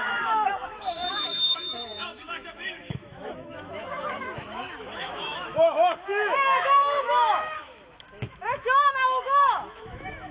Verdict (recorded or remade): remade